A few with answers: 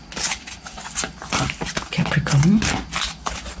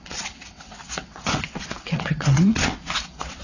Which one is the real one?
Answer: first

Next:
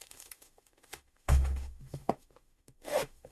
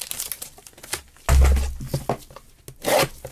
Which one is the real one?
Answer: second